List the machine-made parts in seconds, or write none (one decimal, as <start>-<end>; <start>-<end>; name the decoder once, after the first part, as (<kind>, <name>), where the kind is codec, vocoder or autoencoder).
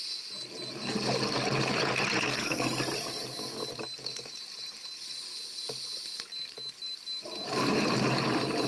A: none